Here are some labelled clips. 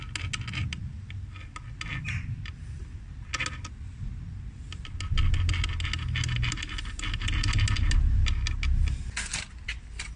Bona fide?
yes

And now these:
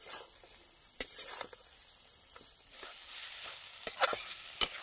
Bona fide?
yes